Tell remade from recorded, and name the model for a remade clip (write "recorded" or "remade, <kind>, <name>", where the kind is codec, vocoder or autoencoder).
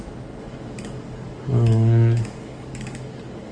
remade, codec, DAC